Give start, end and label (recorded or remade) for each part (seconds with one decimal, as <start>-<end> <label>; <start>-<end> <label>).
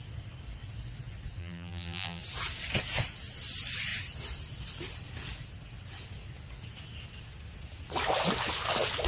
0.0-1.4 recorded; 1.4-2.2 remade; 2.2-9.1 recorded